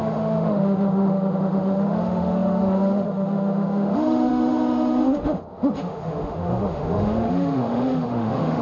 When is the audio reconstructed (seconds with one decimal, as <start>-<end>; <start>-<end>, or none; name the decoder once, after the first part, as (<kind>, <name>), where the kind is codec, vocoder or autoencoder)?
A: 0.0-8.6 (autoencoder, DAC-VAE)